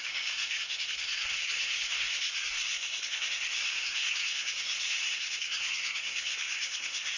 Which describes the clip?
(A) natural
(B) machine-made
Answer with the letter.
B